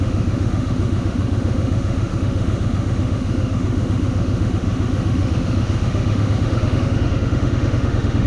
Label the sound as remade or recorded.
remade